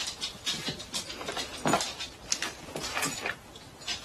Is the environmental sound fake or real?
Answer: fake